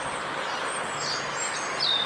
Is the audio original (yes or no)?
yes